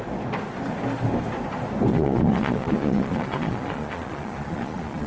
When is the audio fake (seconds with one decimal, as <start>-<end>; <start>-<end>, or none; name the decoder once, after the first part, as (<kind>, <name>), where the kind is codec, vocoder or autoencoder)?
1.9-5.1 (vocoder, Vocos)